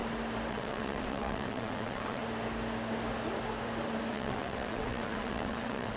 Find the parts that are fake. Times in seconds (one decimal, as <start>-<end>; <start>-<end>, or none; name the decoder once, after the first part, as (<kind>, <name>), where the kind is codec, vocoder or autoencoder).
0.5-2.2 (vocoder, WaveNeXt); 4.1-6.0